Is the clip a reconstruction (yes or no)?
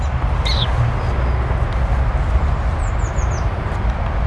no